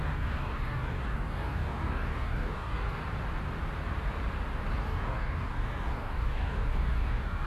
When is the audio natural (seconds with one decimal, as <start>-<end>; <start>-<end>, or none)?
3.0-4.8